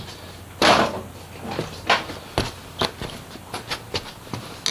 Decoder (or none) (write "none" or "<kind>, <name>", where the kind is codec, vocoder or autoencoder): none